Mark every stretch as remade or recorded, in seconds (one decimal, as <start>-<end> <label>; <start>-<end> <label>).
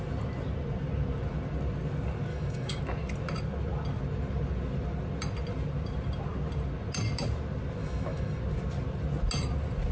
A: 0.0-2.3 recorded; 2.3-2.8 remade; 2.8-7.8 recorded; 7.8-8.4 remade; 8.4-9.9 recorded